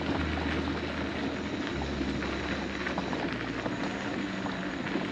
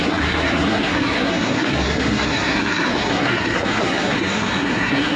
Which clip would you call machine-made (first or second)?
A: second